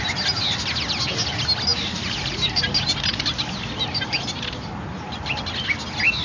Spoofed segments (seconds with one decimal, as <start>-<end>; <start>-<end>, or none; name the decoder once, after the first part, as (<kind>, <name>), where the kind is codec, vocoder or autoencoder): 1.7-5.4 (vocoder, BigVGAN v2)